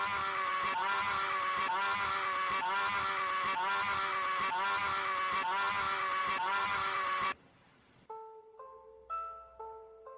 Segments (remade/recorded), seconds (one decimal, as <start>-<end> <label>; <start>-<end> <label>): 0.0-0.5 recorded; 0.5-1.7 remade; 1.7-6.2 recorded; 6.2-7.5 remade; 7.5-10.2 recorded